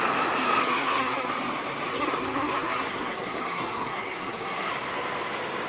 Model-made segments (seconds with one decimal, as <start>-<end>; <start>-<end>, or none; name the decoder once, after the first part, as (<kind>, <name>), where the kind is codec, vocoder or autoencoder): 0.6-1.3 (codec, SNAC); 1.9-4.7